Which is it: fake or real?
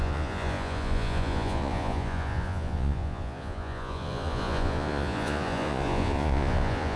fake